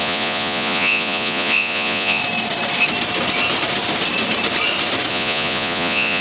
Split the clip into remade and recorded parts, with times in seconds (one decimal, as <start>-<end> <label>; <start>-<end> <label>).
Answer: 0.0-2.2 remade; 2.2-5.1 recorded; 5.1-6.2 remade